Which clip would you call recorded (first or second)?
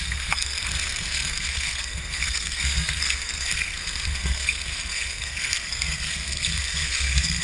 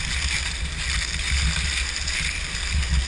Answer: second